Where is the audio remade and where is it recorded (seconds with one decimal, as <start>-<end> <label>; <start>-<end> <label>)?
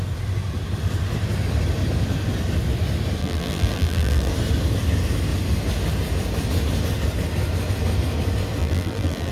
0.0-3.2 recorded; 3.2-4.3 remade; 4.3-8.6 recorded; 8.6-9.3 remade